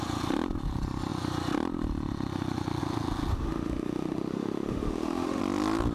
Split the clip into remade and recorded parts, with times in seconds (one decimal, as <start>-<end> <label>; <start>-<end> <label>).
0.0-3.3 recorded; 3.3-5.4 remade; 5.4-5.9 recorded